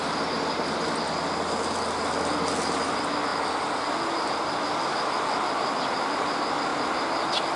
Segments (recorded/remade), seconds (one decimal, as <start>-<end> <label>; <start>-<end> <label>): 0.0-7.6 recorded